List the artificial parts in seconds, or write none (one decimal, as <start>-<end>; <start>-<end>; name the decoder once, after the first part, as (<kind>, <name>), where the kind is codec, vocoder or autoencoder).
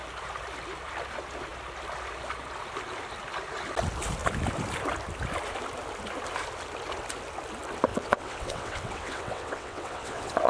7.9-10.5 (vocoder, WaveNeXt)